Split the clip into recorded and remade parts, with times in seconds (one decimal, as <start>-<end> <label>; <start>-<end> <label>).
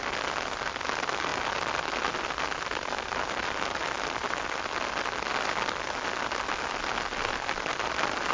0.0-8.3 recorded